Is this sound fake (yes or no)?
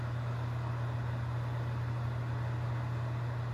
no